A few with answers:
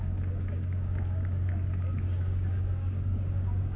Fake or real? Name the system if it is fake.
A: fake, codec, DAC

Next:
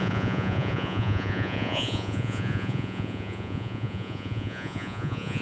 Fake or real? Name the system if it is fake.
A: fake, vocoder, Vocos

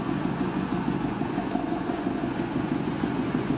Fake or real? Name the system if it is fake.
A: fake, vocoder, Vocos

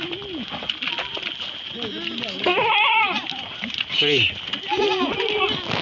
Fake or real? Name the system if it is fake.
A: real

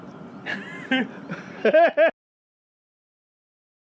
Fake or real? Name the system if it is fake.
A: real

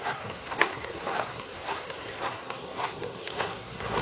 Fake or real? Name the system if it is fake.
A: fake, codec, SNAC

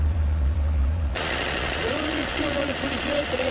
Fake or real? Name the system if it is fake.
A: fake, vocoder, Vocos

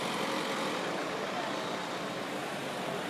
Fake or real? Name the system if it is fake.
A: real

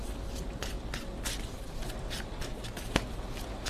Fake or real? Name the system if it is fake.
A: real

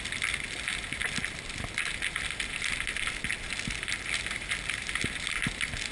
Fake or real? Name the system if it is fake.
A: real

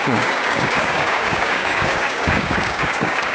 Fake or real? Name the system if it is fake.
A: fake, codec, DAC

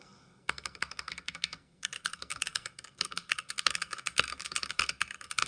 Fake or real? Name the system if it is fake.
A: fake, codec, SNAC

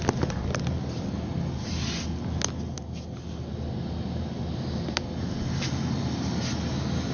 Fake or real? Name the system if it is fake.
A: real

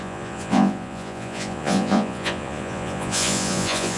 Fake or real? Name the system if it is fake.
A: fake, vocoder, Vocos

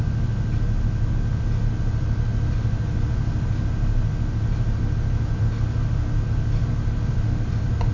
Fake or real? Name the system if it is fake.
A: real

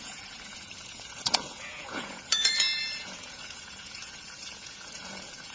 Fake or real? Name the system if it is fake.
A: fake, vocoder, Vocos